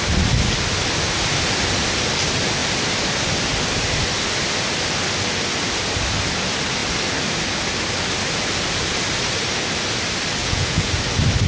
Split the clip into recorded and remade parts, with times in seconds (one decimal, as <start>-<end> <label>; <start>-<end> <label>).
0.0-10.4 recorded; 10.4-10.9 remade; 10.9-11.5 recorded